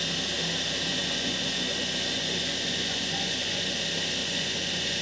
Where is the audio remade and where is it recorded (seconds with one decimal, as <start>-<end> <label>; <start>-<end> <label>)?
0.0-0.9 recorded; 0.9-3.8 remade; 3.8-4.2 recorded; 4.2-5.0 remade